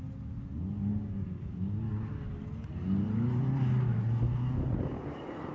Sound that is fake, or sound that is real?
real